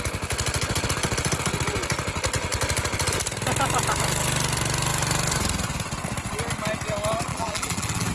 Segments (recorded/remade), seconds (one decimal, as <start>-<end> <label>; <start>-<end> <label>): 0.0-7.3 recorded; 7.3-8.1 remade